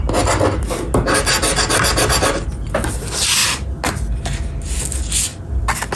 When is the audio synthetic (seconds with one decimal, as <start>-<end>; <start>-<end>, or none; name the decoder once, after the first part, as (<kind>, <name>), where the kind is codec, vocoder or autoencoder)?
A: none